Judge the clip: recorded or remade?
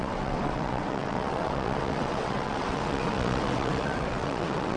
remade